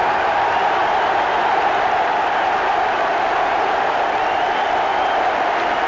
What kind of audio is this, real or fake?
real